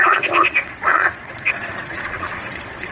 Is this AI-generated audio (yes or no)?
yes